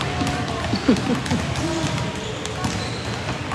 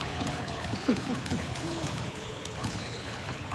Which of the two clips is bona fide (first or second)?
first